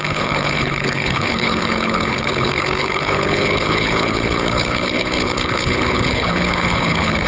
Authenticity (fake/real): fake